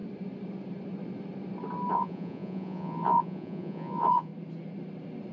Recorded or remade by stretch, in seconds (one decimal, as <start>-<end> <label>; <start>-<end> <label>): 0.0-1.9 recorded; 1.9-4.3 remade; 4.3-5.3 recorded